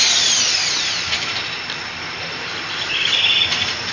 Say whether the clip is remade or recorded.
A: recorded